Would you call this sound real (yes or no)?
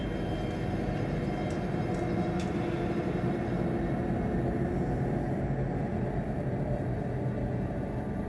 yes